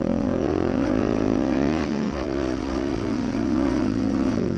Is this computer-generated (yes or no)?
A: yes